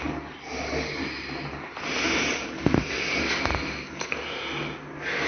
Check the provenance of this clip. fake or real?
real